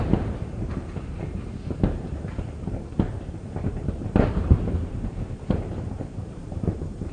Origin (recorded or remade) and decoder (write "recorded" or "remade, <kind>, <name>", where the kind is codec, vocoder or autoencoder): remade, vocoder, BigVGAN v2